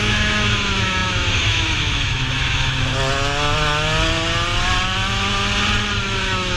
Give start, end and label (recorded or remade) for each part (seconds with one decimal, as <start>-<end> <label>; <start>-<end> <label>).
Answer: 0.0-2.9 remade; 2.9-6.0 recorded; 6.0-6.6 remade